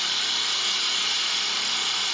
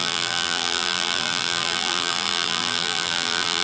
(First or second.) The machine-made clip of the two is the second